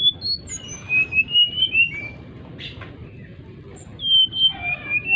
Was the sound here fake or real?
real